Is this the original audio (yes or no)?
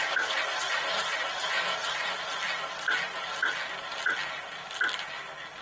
yes